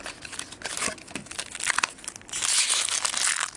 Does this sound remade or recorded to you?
recorded